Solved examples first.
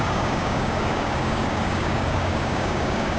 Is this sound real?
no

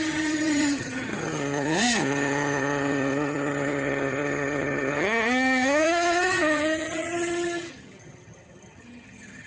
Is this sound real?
no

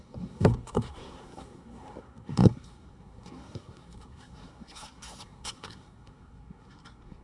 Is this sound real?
no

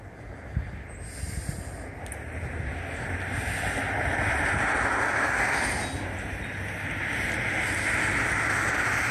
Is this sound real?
yes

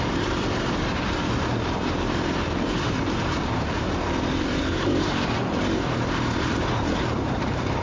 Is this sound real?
no